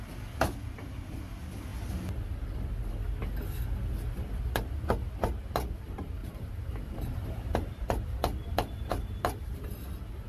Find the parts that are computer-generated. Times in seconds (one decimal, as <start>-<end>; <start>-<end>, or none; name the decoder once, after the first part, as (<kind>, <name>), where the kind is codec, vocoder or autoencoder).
6.2-9.7 (vocoder, BigVGAN v2)